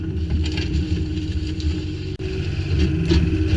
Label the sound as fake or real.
real